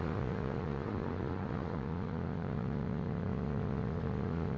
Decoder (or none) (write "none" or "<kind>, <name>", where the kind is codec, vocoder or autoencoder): vocoder, Vocos